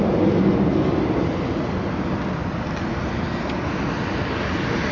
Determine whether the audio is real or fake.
real